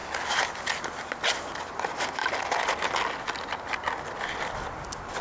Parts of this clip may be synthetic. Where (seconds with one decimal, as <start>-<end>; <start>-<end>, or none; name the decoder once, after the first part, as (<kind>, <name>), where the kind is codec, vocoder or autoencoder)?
none